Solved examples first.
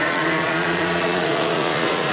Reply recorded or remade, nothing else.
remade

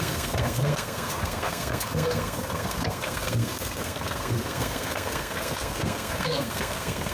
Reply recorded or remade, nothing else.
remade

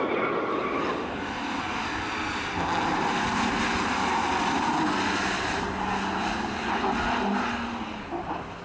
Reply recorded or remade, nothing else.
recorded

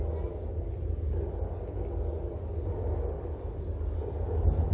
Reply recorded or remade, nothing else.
recorded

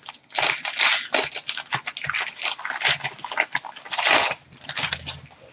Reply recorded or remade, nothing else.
recorded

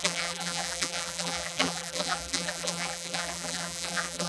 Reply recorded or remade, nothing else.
remade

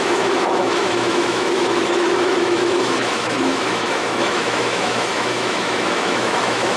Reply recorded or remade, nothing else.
remade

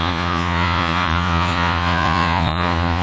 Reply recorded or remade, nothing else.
remade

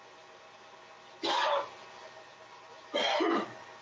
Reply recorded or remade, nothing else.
recorded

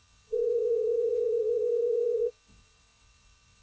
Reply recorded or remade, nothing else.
remade